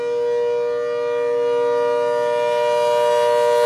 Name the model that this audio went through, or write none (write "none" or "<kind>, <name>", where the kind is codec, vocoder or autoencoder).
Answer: none